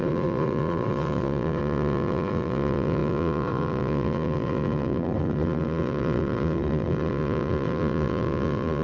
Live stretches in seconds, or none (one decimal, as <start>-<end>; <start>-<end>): none